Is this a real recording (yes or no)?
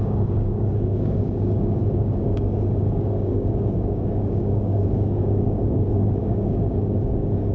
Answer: no